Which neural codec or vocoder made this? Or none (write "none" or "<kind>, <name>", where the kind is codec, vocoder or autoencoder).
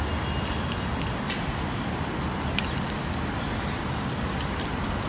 none